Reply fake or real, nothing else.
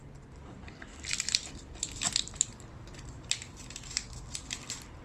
fake